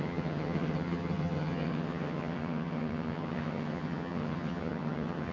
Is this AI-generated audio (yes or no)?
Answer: yes